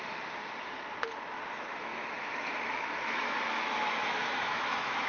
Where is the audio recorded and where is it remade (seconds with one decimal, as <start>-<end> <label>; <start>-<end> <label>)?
0.0-0.4 remade; 0.4-1.3 recorded; 1.3-5.1 remade